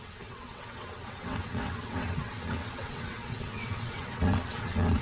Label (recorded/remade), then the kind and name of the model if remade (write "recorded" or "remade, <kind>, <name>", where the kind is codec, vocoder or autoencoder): remade, vocoder, WaveNeXt